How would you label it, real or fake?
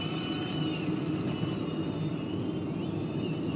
real